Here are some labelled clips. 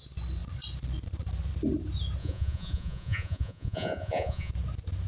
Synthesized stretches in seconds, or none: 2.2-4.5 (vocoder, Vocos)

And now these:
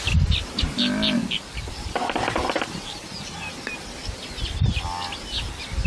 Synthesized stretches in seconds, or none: none